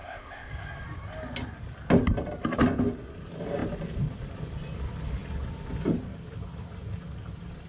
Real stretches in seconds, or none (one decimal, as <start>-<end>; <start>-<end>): 0.5-7.7